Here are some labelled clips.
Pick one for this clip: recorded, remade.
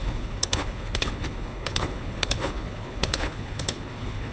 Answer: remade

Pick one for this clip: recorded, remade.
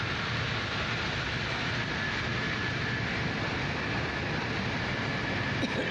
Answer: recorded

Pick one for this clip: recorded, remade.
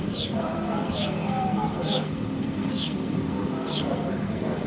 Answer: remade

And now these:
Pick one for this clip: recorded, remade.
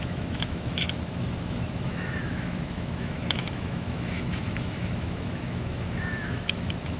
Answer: remade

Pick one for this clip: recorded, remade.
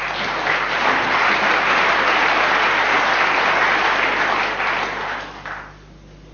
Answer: recorded